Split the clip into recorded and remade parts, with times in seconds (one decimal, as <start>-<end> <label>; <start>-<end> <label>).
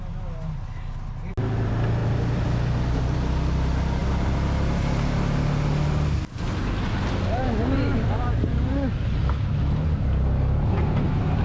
0.0-2.0 recorded; 2.0-3.0 remade; 3.0-11.4 recorded